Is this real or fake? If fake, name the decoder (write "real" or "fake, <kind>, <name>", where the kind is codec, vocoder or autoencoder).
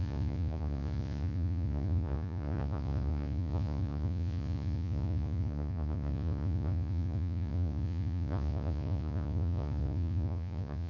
fake, vocoder, Vocos